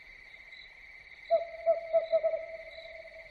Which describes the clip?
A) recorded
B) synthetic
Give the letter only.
A